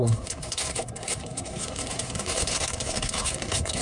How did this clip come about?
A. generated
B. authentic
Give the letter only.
A